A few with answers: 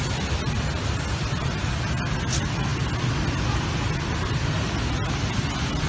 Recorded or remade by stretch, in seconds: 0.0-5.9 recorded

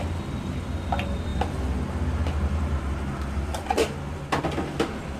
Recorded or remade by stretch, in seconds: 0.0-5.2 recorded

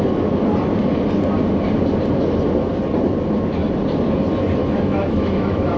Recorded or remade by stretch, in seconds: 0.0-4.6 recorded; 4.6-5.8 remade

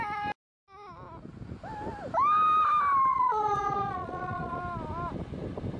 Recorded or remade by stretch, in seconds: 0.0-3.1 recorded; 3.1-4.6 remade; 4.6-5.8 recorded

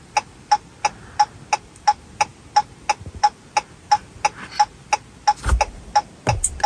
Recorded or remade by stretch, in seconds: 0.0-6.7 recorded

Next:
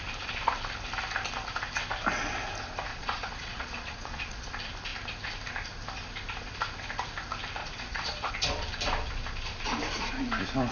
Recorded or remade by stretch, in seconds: 0.0-2.9 recorded; 2.9-4.5 remade; 4.5-7.6 recorded; 7.6-8.3 remade; 8.3-10.7 recorded

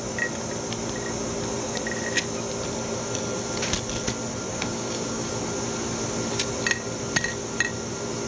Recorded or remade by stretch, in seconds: 0.0-4.5 recorded; 4.5-5.3 remade; 5.3-8.3 recorded